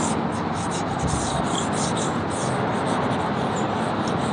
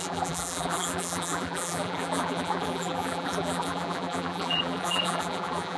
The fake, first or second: second